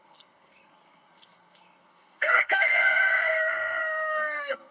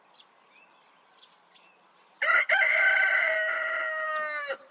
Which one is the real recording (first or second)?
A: second